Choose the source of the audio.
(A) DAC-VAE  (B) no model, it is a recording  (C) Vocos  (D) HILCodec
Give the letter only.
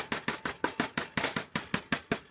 B